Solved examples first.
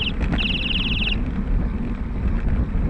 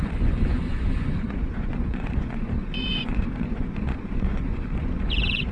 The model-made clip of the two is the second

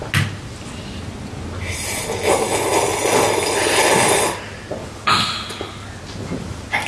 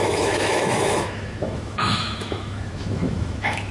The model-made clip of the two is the second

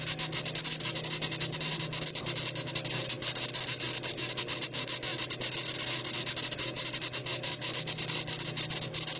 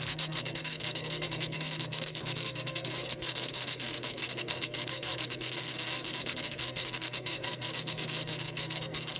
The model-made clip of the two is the second